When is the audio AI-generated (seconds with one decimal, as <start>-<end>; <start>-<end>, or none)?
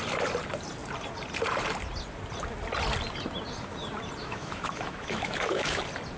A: 4.2-5.8